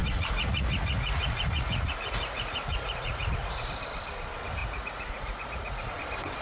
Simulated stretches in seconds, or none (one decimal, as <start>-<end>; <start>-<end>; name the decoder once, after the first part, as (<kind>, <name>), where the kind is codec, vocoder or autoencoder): 0.0-3.7 (vocoder, Vocos); 4.6-5.9